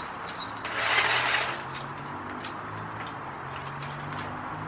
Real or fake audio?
real